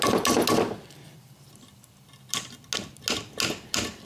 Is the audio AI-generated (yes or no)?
no